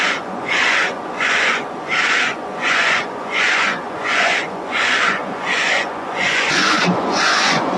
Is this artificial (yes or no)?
yes